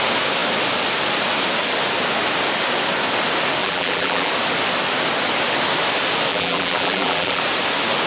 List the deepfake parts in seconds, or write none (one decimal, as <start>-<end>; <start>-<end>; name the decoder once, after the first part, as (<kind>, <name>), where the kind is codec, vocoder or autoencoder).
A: 3.6-4.3 (vocoder, BigVGAN v2); 6.3-7.4